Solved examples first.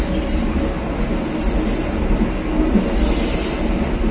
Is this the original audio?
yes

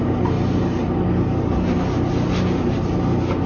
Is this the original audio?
yes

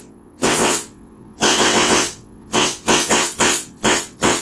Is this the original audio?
no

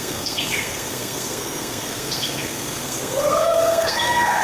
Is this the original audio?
no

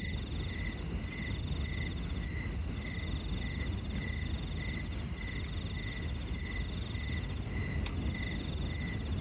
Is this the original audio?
yes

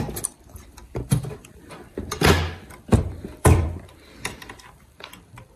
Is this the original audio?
no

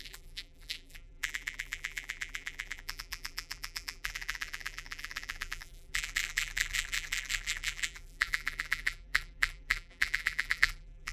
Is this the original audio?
no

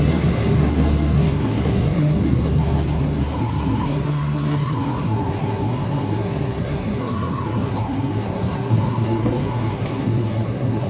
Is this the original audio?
no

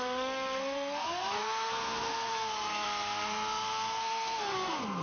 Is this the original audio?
no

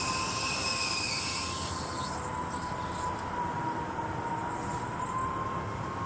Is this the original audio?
yes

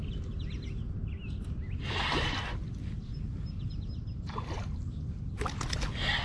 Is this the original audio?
yes